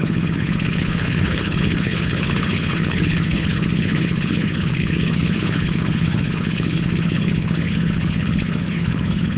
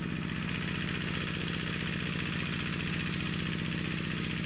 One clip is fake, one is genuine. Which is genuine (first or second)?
second